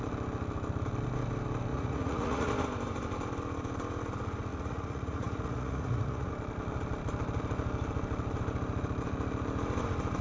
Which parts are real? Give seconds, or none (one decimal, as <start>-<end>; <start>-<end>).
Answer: 0.0-1.7; 2.5-4.5; 6.3-10.2